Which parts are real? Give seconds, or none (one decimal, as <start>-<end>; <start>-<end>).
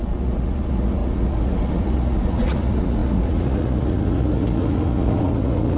none